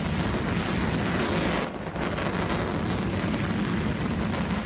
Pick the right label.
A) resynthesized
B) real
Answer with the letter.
B